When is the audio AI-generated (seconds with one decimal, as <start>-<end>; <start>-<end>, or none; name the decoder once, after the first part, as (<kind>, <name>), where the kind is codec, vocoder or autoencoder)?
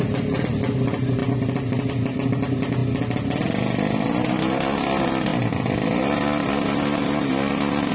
none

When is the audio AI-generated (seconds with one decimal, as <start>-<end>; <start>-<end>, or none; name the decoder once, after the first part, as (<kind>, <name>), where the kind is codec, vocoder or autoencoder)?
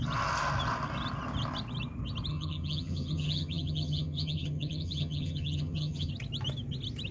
2.3-6.1 (vocoder, HiFi-GAN)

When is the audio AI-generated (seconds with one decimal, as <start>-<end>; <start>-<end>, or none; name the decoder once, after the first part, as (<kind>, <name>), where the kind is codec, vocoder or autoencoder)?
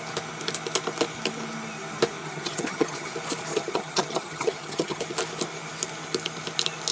2.2-3.1 (vocoder, HiFi-GAN); 3.5-5.0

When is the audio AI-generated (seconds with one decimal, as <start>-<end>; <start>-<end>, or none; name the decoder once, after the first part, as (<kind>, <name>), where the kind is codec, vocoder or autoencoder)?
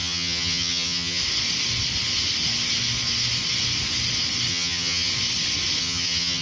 0.0-1.2 (vocoder, HiFi-GAN); 4.5-5.1; 5.8-6.4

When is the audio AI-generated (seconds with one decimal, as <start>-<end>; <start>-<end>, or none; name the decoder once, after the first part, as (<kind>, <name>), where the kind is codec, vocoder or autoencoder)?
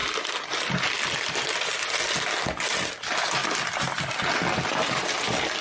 none